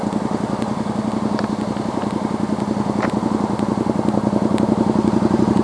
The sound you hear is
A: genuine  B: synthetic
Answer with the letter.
A